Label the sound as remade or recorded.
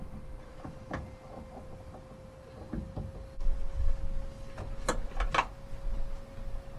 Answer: recorded